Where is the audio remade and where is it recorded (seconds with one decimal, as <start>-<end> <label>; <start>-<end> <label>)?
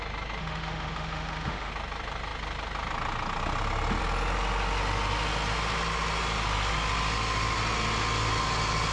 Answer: 0.0-0.4 recorded; 0.4-1.7 remade; 1.7-8.9 recorded